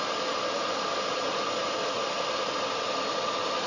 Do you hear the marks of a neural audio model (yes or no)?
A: no